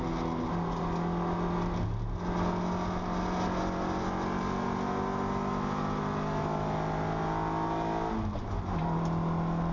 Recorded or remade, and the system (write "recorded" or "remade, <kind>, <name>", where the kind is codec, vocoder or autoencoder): recorded